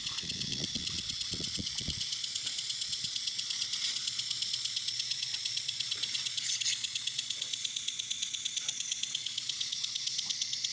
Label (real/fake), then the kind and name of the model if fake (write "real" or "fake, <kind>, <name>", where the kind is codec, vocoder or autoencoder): fake, vocoder, Vocos